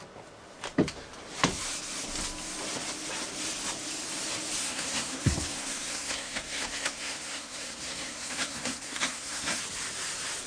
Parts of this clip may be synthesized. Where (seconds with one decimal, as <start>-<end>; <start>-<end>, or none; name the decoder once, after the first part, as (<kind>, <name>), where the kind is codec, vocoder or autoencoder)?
4.6-9.6 (codec, SNAC)